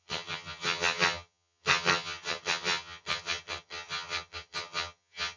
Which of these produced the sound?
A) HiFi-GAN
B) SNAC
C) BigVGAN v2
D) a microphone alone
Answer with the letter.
A